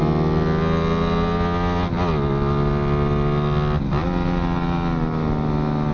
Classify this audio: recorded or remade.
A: recorded